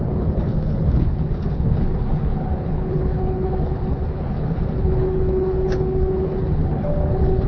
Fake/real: fake